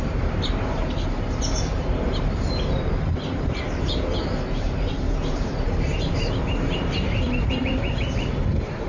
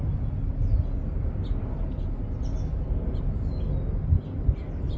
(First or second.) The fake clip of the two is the first